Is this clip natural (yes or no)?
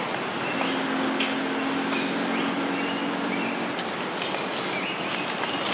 yes